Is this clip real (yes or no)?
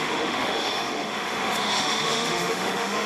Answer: no